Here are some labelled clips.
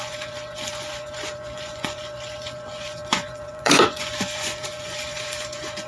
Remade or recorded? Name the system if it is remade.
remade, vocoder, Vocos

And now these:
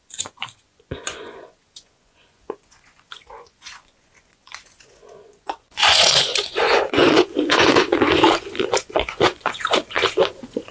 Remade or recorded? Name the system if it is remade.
remade, vocoder, Vocos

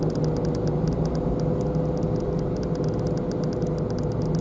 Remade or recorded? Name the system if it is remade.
recorded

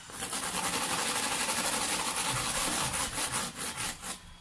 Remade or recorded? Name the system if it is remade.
recorded